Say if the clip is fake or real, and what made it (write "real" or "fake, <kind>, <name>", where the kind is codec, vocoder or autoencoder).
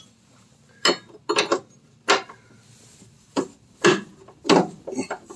real